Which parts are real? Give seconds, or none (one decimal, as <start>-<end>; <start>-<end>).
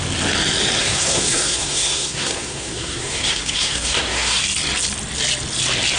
0.0-0.8; 4.4-6.0